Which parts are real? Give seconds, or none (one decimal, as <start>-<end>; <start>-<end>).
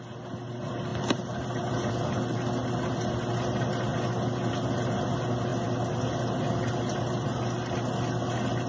0.0-0.9; 1.9-8.7